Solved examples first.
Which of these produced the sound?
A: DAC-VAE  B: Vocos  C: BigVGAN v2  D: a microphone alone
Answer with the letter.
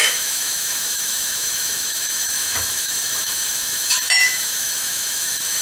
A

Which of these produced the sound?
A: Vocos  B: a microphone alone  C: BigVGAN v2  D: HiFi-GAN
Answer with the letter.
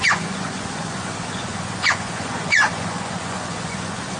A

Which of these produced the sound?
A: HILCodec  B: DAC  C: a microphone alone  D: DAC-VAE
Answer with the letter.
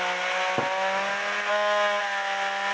C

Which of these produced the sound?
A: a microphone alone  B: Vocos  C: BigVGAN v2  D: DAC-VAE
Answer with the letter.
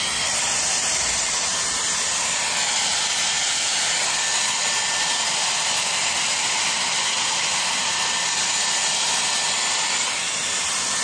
C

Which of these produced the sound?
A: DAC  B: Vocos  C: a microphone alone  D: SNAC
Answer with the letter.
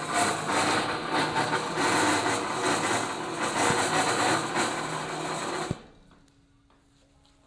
C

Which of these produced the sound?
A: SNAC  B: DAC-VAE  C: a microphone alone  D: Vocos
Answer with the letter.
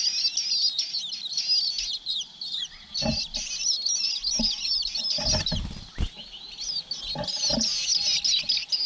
C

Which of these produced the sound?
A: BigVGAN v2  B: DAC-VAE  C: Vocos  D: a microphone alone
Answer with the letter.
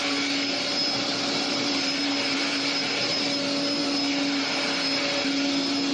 D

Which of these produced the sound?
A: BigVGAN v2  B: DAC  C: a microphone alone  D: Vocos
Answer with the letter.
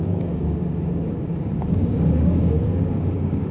B